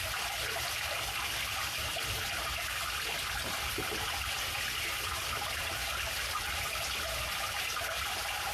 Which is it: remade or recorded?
recorded